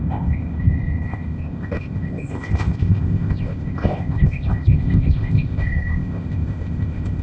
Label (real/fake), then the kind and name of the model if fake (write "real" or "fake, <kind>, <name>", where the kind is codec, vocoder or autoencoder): fake, codec, ZipCodec